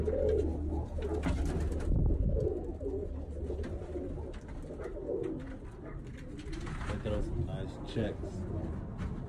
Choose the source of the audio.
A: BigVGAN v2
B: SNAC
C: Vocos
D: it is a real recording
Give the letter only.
D